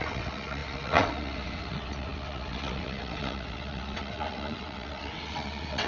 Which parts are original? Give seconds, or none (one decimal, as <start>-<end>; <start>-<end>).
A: none